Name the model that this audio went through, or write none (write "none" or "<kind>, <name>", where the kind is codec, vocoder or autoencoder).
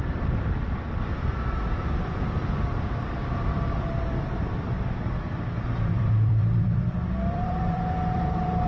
vocoder, BigVGAN v2